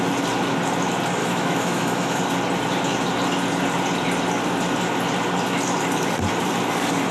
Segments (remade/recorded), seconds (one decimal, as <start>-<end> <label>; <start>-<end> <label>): 0.0-1.2 recorded; 1.2-2.2 remade; 2.2-7.1 recorded